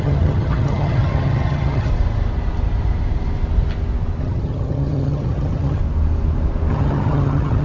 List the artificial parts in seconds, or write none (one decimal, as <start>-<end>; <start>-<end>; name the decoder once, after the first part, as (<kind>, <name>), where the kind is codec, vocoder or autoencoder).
0.0-1.9 (vocoder, HiFi-GAN); 4.2-5.8; 6.7-7.6